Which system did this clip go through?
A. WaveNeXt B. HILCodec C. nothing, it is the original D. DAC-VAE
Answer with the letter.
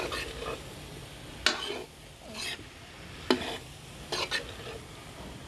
C